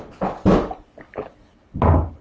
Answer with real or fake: real